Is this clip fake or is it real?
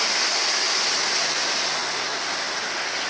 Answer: real